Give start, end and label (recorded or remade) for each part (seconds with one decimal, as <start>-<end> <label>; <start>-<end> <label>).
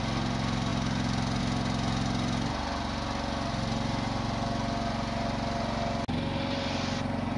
0.0-7.4 recorded